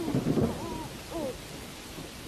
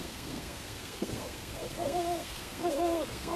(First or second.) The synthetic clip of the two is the second